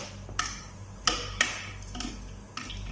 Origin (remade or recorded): recorded